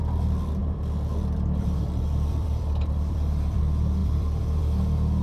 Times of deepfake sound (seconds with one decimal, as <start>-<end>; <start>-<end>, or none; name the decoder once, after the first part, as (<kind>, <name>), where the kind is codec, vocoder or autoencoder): 0.6-3.6 (vocoder, BigVGAN v2); 4.0-4.6